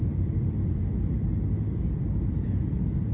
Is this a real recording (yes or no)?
no